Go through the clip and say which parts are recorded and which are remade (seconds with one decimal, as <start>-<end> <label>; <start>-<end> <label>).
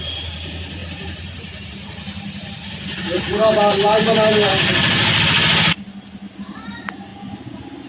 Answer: 0.0-7.9 recorded